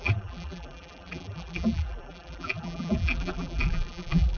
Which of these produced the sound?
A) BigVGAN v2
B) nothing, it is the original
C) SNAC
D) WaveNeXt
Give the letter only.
A